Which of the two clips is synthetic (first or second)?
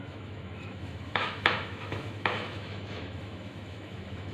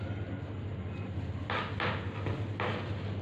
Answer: first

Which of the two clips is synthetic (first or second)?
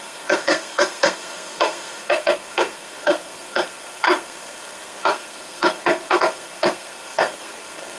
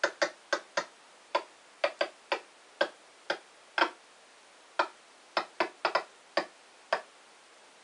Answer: first